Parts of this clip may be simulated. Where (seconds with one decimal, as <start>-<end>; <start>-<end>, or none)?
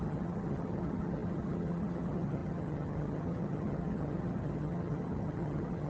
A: 0.0-5.9